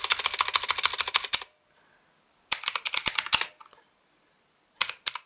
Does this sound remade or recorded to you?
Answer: recorded